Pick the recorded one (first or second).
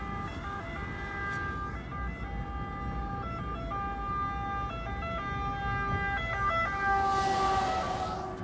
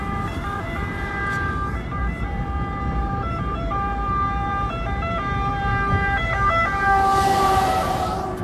first